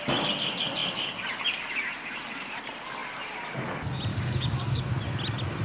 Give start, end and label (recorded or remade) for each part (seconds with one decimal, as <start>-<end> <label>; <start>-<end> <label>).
0.0-4.1 recorded; 4.1-4.8 remade; 4.8-5.6 recorded